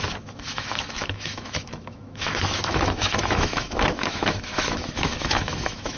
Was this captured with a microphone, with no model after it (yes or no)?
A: no